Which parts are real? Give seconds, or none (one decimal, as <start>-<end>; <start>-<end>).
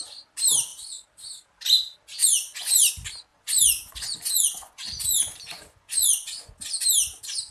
0.0-2.2; 2.9-3.3; 6.8-7.5